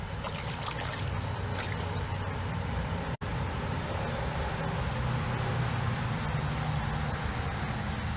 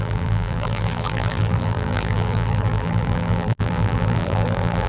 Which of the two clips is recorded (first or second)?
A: first